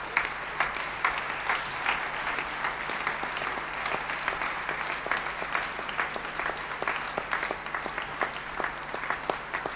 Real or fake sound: real